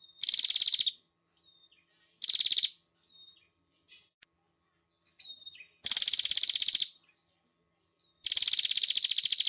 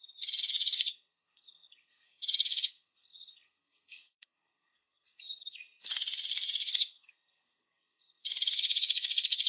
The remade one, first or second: second